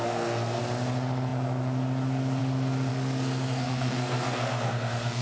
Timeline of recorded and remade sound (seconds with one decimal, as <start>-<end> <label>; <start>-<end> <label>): 0.0-0.6 remade; 0.6-2.9 recorded; 2.9-5.2 remade